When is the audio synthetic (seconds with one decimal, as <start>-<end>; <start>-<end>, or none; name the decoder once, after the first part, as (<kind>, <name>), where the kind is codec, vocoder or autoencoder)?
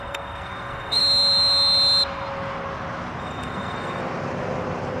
0.0-1.0 (codec, SNAC); 3.2-4.0